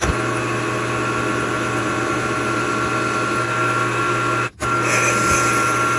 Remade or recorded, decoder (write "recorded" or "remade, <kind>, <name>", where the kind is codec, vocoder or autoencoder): recorded